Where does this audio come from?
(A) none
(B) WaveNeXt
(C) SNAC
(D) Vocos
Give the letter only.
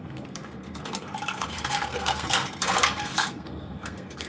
C